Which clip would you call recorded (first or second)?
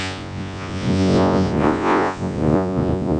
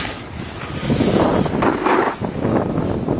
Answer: second